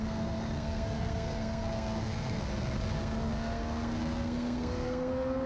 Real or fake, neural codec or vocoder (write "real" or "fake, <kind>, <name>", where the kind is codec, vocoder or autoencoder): fake, codec, SNAC